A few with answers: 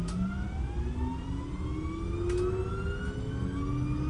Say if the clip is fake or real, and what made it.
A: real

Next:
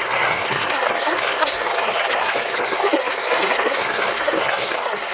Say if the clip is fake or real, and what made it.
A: fake, codec, SNAC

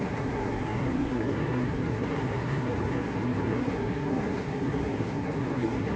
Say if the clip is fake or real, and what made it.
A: fake, codec, SNAC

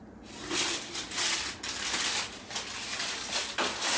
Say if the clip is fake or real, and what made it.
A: real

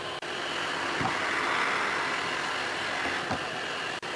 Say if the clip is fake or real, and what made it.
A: real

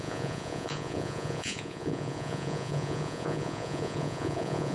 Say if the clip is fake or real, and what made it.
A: fake, vocoder, Vocos